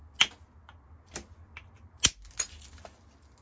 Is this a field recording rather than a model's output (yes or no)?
yes